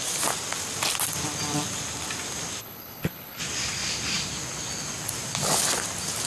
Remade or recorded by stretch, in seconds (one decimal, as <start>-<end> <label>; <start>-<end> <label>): 0.0-2.6 recorded; 2.6-3.4 remade; 3.4-6.3 recorded